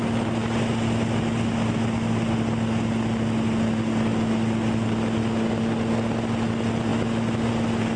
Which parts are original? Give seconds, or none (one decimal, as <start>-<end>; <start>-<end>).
0.0-8.0

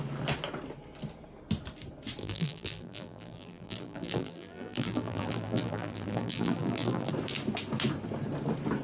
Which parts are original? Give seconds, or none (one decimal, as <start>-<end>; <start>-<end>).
0.0-2.2; 7.1-8.8

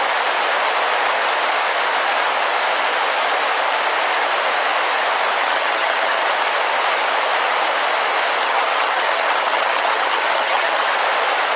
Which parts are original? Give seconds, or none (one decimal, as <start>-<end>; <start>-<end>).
0.0-5.4; 6.2-8.4; 10.9-11.6

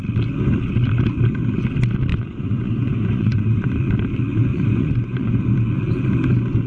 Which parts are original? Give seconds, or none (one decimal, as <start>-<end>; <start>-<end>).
0.0-2.1; 3.8-4.5; 5.4-6.7

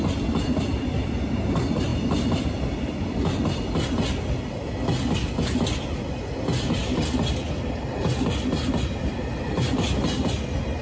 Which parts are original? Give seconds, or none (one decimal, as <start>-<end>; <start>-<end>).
0.0-10.8

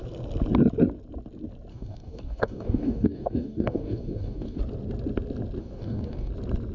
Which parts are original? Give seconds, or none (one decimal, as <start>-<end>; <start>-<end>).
0.0-1.7; 4.6-5.6; 6.3-6.7

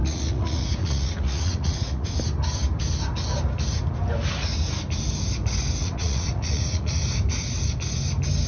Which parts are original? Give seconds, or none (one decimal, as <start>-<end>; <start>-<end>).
2.1-5.8; 7.0-8.5